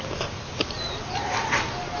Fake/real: real